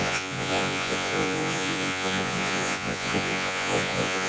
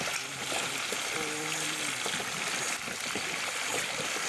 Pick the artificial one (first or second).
first